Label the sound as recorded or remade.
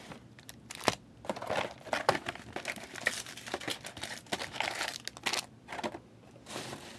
recorded